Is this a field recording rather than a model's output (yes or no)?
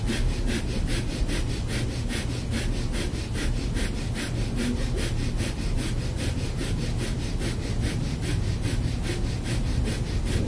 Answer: yes